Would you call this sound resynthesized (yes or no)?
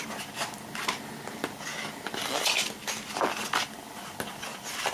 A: no